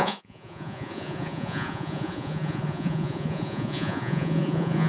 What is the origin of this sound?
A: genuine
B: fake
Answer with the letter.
B